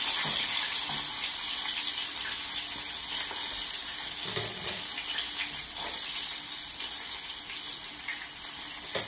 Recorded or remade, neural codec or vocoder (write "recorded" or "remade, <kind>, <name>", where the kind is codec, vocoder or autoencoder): recorded